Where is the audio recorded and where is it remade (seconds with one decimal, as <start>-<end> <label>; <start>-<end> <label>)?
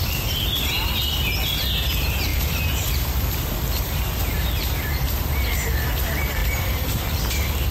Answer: 0.0-2.3 recorded; 2.3-4.2 remade; 4.2-6.4 recorded; 6.4-7.3 remade; 7.3-7.7 recorded